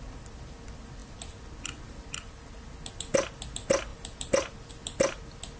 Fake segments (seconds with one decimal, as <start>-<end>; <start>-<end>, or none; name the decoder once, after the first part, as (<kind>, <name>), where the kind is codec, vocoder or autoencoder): 3.9-4.7 (vocoder, BigVGAN v2)